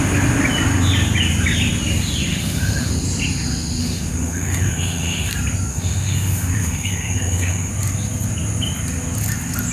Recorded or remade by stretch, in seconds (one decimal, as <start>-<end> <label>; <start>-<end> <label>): 0.0-2.3 recorded; 2.3-2.9 remade; 2.9-3.8 recorded; 3.8-5.3 remade; 5.3-5.7 recorded; 5.7-7.7 remade; 7.7-9.7 recorded